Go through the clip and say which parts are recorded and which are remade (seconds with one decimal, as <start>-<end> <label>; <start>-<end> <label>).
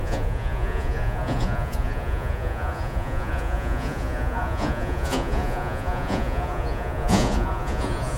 0.0-8.2 remade